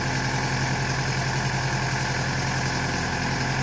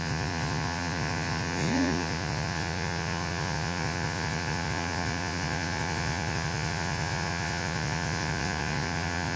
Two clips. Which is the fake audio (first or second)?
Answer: second